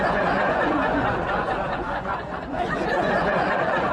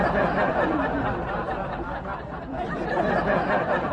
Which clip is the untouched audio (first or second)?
second